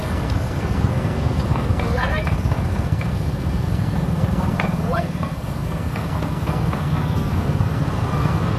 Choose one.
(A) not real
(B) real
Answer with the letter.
A